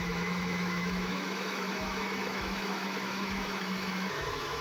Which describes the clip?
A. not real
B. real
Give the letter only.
A